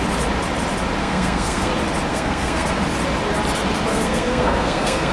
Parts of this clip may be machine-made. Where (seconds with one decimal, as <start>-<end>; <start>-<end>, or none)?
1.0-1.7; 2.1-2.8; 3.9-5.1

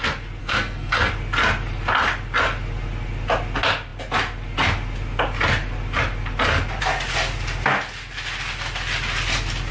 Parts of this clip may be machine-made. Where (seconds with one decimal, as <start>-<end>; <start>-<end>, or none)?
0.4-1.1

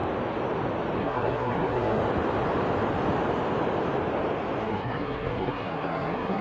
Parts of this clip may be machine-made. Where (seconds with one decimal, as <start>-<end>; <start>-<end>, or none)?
1.0-2.0; 4.6-6.4

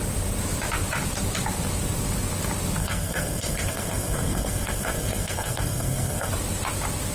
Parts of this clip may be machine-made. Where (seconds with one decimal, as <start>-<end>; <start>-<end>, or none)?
2.8-6.3

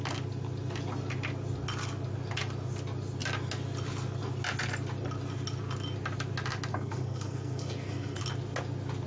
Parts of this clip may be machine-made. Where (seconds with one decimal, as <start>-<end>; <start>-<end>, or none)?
6.7-8.2

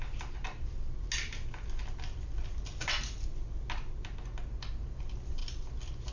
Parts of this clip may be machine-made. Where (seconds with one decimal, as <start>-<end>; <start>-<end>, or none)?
none

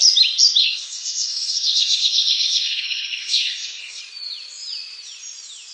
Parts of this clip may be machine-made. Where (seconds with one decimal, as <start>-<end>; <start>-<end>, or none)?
0.6-4.0

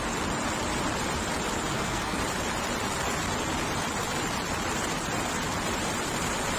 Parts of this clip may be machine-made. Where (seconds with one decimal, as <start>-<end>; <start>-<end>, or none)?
1.7-2.2